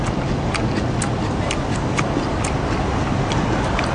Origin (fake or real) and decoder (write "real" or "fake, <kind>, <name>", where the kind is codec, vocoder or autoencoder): real